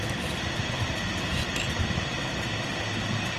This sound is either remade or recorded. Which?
recorded